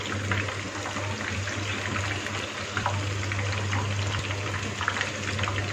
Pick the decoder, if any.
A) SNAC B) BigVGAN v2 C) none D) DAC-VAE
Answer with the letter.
C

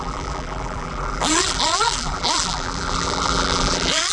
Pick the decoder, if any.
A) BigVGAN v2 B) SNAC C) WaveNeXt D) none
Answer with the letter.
A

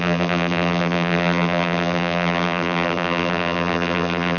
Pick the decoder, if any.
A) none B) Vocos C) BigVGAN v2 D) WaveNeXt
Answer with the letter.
C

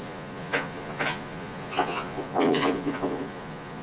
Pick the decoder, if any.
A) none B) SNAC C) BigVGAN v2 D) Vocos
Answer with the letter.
D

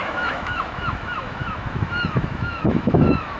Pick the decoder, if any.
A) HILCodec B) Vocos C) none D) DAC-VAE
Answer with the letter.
D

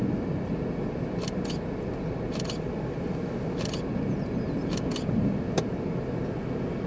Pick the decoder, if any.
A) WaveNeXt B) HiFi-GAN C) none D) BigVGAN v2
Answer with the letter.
C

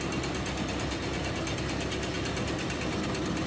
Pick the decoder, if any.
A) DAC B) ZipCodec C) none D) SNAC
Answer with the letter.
C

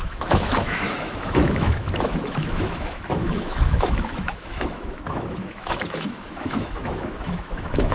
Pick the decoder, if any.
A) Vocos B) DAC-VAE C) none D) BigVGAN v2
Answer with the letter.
B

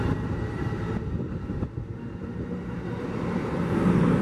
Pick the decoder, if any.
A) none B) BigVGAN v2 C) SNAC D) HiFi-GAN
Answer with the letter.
A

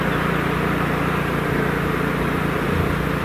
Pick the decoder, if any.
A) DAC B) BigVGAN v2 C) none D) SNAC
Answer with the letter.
C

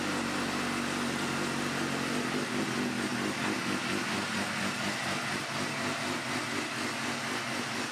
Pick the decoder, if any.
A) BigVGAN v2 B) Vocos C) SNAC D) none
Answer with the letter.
D